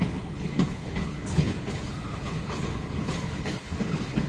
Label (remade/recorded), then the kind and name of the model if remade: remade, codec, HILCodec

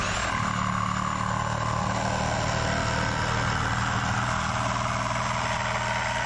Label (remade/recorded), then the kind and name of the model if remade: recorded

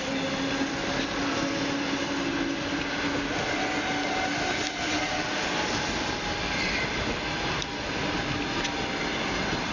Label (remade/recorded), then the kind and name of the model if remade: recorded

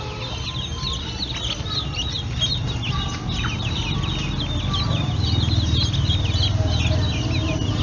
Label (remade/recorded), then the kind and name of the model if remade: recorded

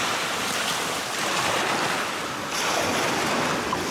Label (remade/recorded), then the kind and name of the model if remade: recorded